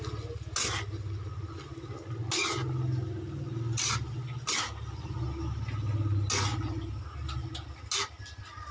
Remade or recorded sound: recorded